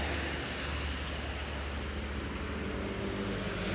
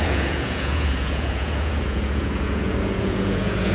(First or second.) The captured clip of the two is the first